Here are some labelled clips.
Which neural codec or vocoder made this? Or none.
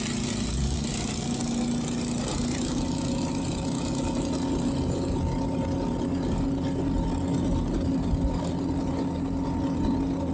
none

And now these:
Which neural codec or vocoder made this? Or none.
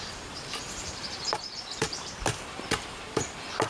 vocoder, BigVGAN v2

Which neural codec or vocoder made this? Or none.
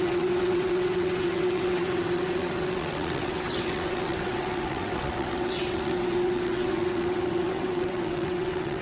vocoder, WaveNeXt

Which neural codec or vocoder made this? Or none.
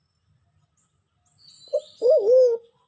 none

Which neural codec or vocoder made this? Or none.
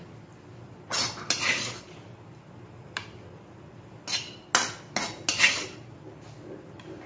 none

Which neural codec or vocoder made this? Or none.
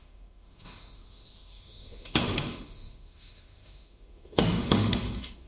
autoencoder, DAC-VAE